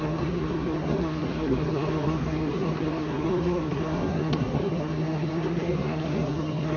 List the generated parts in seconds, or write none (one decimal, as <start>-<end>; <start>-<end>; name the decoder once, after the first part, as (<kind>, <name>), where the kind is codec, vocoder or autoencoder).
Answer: 0.0-6.8 (codec, SNAC)